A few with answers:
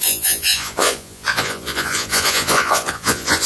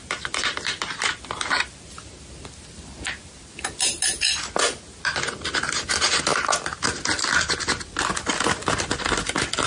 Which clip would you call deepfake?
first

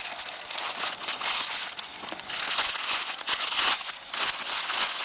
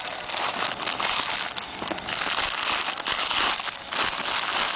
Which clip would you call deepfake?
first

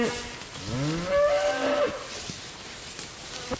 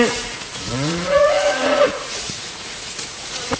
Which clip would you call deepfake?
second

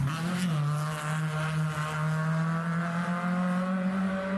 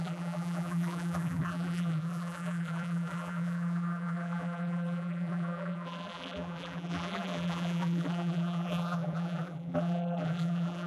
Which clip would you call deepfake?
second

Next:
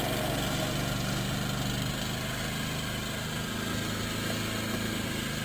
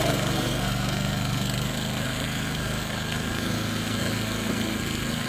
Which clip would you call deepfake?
second